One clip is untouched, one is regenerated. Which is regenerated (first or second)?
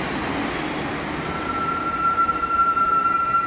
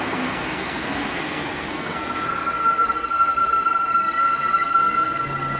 second